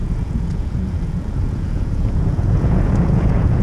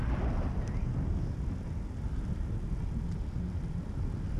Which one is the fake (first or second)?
first